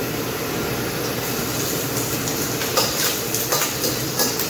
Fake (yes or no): no